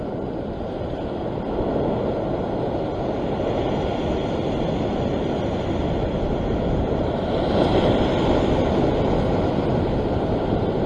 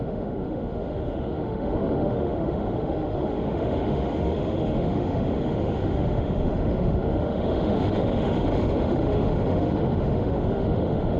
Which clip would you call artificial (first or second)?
second